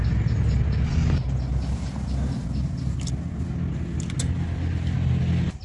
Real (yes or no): yes